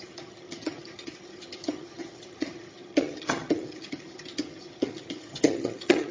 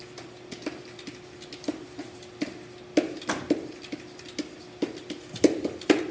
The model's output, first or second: first